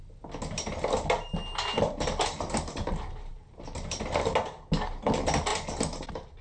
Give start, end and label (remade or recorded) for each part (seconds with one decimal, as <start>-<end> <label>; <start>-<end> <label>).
0.0-6.4 recorded